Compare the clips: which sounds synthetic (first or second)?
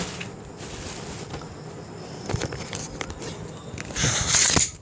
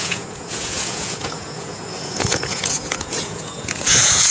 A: second